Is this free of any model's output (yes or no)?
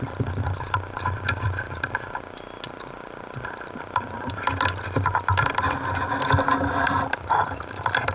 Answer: yes